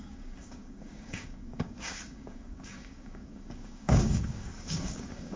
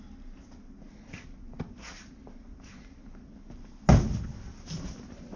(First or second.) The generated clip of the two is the first